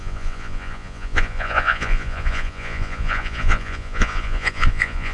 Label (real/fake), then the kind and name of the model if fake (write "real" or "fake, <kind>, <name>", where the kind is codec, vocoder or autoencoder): fake, vocoder, Vocos